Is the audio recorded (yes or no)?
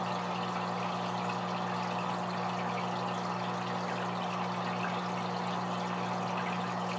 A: yes